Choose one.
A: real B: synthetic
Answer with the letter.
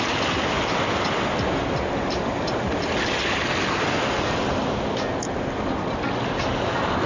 A